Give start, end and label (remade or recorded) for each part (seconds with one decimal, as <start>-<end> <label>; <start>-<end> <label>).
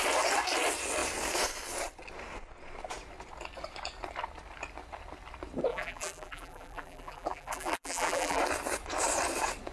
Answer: 0.0-5.7 recorded; 5.7-8.4 remade; 8.4-9.7 recorded